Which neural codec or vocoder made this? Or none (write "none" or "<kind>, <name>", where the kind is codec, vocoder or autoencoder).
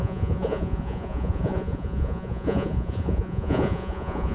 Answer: vocoder, Vocos